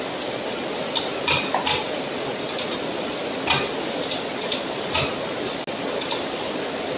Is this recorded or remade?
recorded